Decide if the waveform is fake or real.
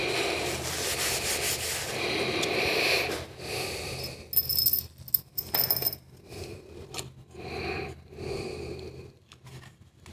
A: real